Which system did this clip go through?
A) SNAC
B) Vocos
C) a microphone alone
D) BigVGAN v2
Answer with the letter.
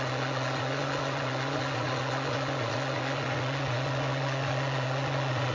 B